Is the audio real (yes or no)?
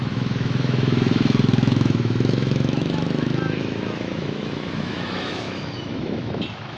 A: no